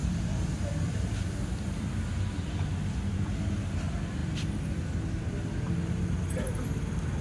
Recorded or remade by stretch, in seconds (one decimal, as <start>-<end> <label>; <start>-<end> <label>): 0.0-2.2 remade; 2.2-7.2 recorded